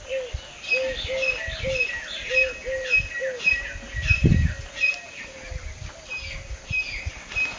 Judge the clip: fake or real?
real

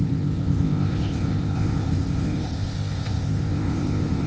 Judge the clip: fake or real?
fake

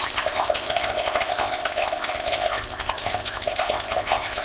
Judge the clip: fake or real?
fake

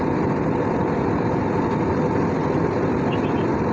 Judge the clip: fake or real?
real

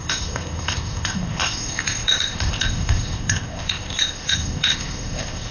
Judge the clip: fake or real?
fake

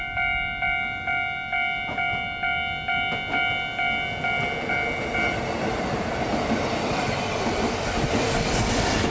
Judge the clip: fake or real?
real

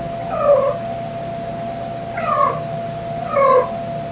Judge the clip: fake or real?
real